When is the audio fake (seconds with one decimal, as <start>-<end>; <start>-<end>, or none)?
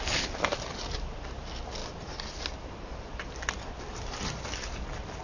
none